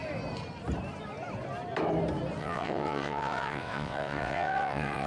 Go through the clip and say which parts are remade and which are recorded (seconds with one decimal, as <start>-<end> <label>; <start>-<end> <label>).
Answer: 0.0-2.4 recorded; 2.4-5.1 remade